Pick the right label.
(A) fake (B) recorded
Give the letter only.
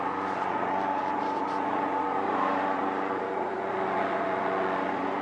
A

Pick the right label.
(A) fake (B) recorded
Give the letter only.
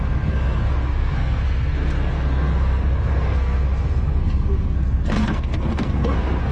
A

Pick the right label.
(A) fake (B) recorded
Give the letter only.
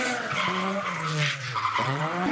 A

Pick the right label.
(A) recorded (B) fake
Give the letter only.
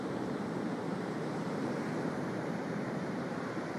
B